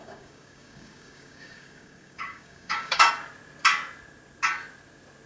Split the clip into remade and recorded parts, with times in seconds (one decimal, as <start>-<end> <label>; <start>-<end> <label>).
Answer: 0.0-3.1 remade; 3.1-5.3 recorded